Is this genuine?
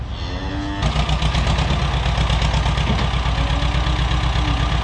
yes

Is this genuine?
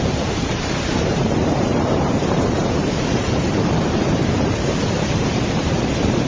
no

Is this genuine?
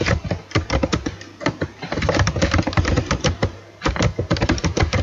no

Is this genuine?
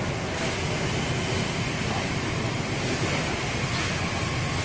yes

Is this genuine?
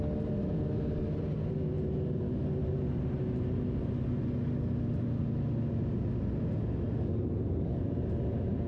yes